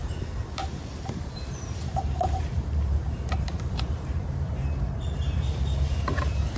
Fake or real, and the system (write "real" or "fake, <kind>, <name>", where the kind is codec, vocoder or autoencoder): fake, vocoder, BigVGAN v2